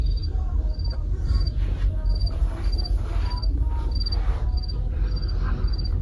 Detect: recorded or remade remade